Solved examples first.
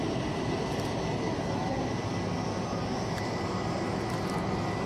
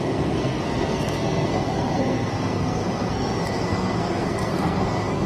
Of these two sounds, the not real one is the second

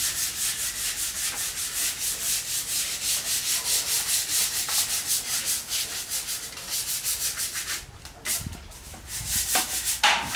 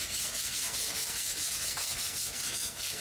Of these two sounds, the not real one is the second